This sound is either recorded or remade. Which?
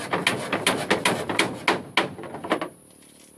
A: recorded